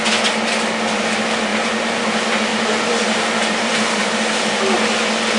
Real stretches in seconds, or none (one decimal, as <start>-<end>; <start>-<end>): 0.0-1.5; 2.0-2.5; 4.6-5.4